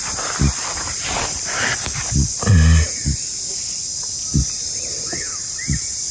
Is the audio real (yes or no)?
yes